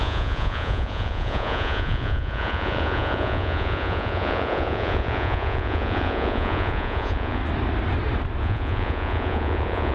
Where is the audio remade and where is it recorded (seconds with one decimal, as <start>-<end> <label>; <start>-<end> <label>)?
0.0-7.4 remade; 7.4-8.4 recorded; 8.4-9.9 remade